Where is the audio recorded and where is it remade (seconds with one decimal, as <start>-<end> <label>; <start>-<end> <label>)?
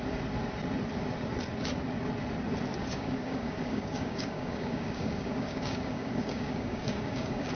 0.0-2.8 recorded; 2.8-7.5 remade